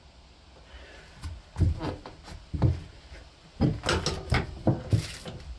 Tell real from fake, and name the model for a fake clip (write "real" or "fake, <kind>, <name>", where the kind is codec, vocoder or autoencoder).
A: real